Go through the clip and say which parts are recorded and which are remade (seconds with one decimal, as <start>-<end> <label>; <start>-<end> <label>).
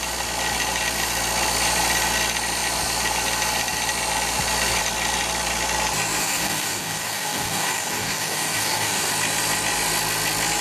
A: 0.0-6.2 recorded; 6.2-9.1 remade; 9.1-10.6 recorded